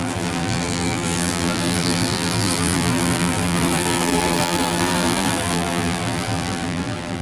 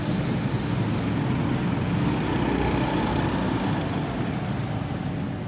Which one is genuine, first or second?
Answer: second